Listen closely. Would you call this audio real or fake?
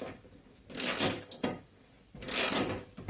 real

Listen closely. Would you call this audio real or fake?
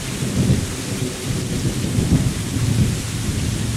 real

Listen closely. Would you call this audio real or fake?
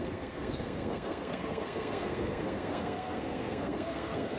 fake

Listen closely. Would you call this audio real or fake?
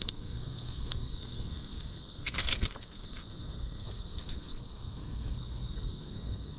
fake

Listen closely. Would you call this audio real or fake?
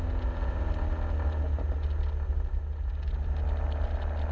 real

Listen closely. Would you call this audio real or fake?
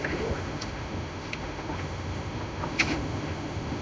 fake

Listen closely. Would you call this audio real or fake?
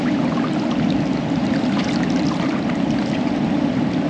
real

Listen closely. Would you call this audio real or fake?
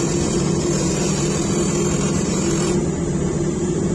fake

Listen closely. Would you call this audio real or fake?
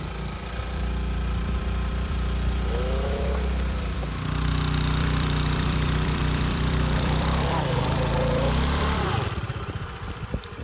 fake